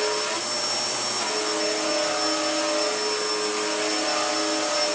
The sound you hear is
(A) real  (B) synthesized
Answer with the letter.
A